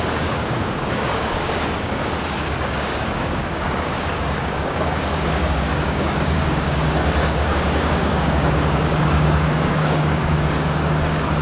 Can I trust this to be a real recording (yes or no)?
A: no